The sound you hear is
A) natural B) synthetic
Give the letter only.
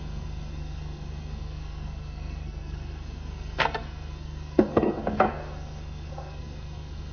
B